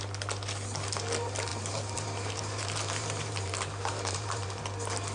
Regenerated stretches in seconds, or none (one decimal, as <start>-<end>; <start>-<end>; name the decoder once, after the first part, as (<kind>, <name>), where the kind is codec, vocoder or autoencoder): 1.5-4.6 (vocoder, BigVGAN v2)